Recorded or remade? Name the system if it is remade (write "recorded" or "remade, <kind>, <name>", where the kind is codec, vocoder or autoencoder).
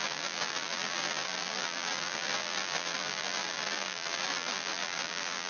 remade, vocoder, BigVGAN v2